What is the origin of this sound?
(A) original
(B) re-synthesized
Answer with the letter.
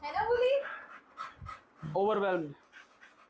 A